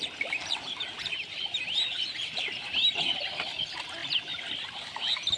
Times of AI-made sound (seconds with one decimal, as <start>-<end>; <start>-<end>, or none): none